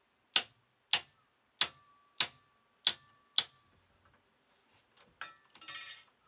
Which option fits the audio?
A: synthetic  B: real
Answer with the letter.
B